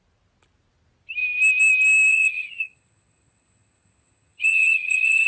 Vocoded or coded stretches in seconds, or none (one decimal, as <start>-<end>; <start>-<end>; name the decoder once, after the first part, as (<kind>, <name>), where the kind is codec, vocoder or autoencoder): 2.1-5.3 (vocoder, HiFi-GAN)